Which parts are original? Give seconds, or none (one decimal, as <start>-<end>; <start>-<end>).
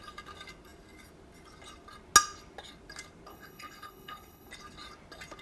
0.0-3.3; 4.5-5.4